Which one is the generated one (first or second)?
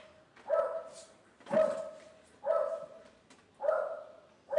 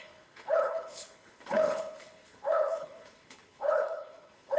second